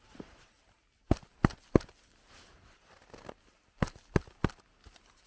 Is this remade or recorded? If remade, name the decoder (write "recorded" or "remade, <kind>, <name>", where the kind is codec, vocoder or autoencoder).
recorded